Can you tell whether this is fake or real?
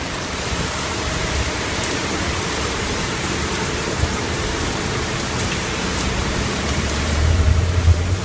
fake